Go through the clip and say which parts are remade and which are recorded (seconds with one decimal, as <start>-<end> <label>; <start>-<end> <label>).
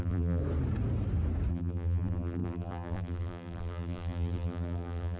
0.0-0.4 remade; 0.4-1.5 recorded; 1.5-5.2 remade